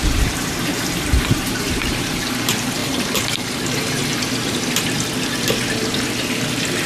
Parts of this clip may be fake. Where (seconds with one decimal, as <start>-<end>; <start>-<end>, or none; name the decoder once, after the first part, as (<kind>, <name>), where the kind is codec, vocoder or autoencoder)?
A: 0.0-4.0 (vocoder, BigVGAN v2)